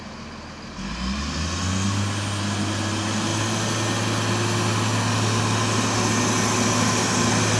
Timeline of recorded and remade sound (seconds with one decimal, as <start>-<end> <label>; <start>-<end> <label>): 0.0-7.6 recorded